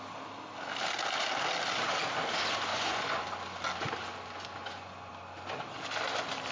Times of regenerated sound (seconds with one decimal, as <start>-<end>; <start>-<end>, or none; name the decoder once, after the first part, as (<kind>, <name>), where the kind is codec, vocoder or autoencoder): 2.7-3.2 (vocoder, Vocos); 4.6-5.1